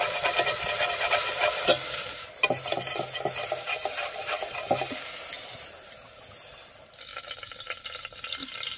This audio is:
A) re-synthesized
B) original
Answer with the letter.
B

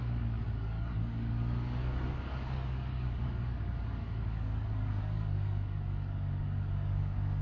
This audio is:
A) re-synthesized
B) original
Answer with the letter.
A